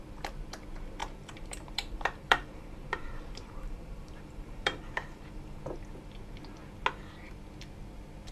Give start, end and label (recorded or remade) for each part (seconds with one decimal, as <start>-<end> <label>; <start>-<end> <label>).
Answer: 0.0-1.0 recorded; 1.0-5.6 remade; 5.6-8.3 recorded